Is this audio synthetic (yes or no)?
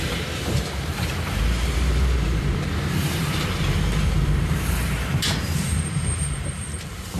yes